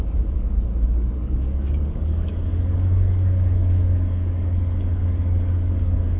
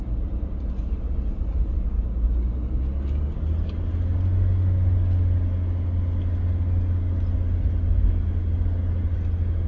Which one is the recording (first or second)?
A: second